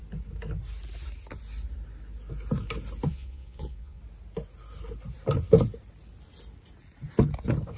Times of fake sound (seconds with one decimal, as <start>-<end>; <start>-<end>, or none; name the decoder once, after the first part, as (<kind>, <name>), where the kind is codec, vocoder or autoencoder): 3.1-4.0 (vocoder, Vocos)